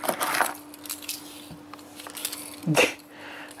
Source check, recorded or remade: recorded